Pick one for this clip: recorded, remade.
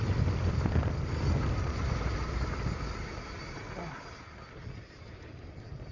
recorded